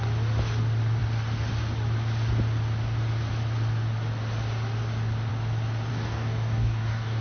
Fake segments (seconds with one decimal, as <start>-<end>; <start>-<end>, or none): 5.9-7.2